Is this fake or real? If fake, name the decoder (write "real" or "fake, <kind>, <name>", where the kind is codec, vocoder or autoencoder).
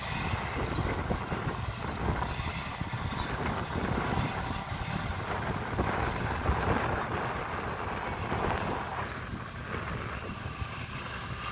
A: real